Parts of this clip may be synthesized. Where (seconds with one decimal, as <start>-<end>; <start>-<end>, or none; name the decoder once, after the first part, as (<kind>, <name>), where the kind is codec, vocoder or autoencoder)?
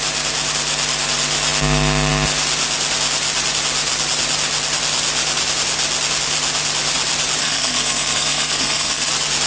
7.4-9.1 (codec, SNAC)